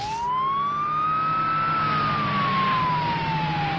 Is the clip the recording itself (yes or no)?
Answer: yes